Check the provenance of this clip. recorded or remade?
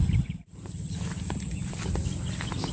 recorded